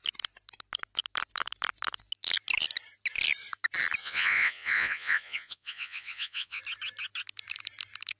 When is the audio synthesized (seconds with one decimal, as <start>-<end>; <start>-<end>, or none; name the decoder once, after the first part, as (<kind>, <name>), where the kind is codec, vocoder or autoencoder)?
4.0-6.6 (vocoder, Vocos)

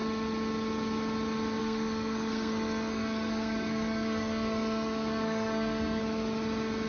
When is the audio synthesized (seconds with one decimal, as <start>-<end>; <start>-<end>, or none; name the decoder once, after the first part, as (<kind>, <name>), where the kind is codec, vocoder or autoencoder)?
1.6-6.0 (codec, SNAC)

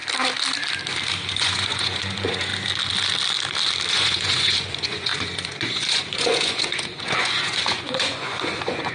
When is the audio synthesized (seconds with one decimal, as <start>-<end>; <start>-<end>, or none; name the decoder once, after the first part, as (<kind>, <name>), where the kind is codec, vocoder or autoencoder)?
1.3-2.5 (vocoder, Vocos); 3.9-8.9

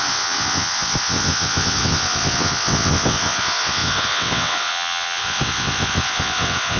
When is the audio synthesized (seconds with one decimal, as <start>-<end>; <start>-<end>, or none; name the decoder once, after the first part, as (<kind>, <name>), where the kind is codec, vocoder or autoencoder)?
0.0-6.8 (vocoder, WaveNeXt)

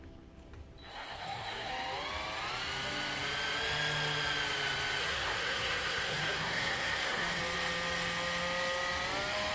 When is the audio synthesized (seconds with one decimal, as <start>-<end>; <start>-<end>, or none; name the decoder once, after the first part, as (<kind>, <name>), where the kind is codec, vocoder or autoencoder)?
0.9-1.7 (codec, SNAC); 5.0-7.4

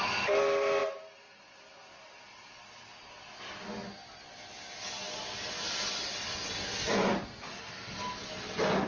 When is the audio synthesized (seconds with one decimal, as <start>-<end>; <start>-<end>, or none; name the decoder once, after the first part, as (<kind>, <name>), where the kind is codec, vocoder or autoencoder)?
none